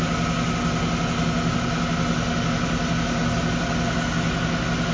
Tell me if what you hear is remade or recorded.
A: recorded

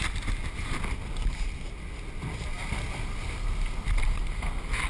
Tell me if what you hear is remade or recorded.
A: recorded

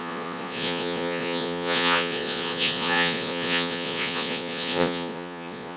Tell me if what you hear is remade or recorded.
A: remade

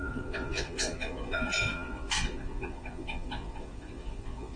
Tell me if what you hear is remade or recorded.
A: remade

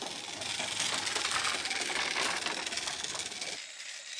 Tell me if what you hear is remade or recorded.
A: recorded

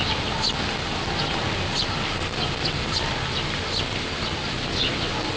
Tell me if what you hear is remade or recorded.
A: recorded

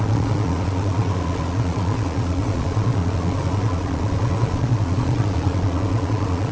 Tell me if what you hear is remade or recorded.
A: remade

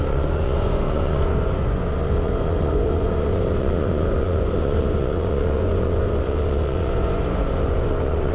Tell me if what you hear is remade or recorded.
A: remade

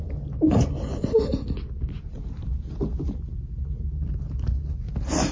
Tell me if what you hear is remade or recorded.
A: recorded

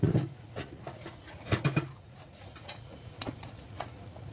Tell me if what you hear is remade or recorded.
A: remade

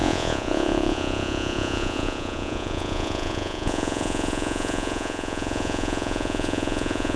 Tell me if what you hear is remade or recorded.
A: remade